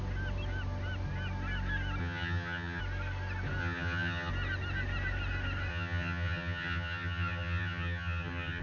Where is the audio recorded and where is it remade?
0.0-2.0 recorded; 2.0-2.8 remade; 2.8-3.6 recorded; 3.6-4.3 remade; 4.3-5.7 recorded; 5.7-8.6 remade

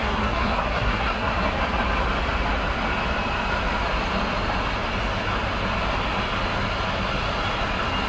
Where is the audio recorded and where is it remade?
0.0-1.3 remade; 1.3-8.1 recorded

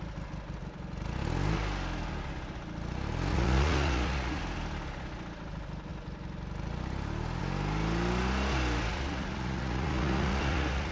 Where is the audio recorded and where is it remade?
0.0-3.3 recorded; 3.3-4.4 remade; 4.4-8.9 recorded; 8.9-10.9 remade